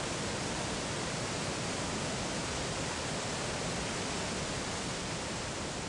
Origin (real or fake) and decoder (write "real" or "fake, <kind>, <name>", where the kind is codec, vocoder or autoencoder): fake, vocoder, BigVGAN v2